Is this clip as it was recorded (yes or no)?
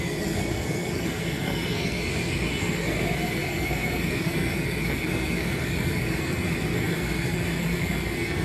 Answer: no